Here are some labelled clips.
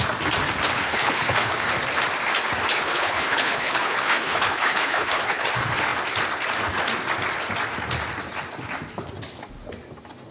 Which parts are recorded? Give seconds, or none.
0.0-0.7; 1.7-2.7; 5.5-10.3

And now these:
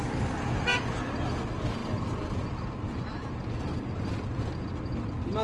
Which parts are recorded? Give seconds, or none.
0.0-5.4

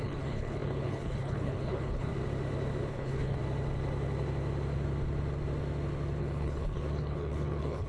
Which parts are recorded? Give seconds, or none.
2.1-2.9; 3.4-6.2

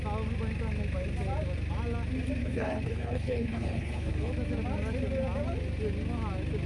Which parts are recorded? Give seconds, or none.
0.0-2.4; 4.3-6.7

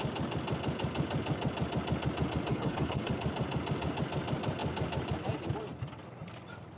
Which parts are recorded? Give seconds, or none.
0.0-2.5; 3.1-6.8